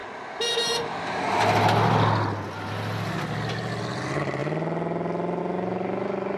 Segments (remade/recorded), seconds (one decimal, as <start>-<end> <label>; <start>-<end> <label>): 0.0-6.4 recorded